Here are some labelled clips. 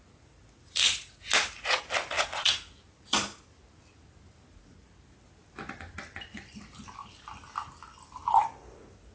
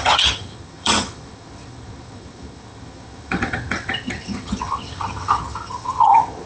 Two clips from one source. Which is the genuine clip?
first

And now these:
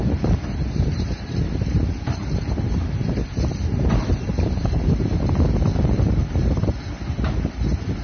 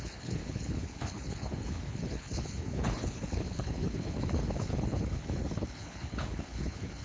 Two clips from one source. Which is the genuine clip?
first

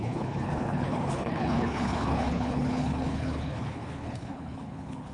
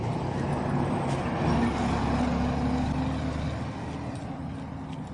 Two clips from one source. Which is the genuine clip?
second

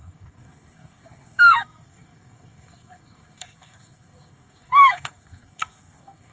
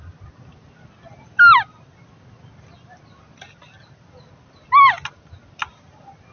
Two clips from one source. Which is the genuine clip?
second